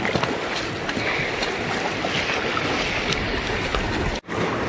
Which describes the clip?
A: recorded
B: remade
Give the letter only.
A